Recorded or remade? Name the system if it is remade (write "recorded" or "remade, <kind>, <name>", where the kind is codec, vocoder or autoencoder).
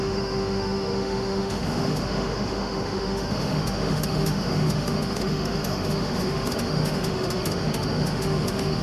remade, autoencoder, DAC-VAE